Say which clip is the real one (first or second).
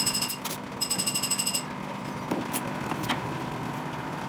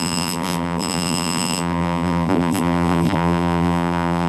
first